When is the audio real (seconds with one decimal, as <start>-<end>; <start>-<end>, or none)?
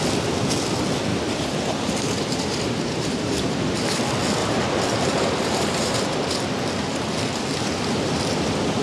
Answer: 0.0-1.1; 4.0-4.4; 6.1-8.8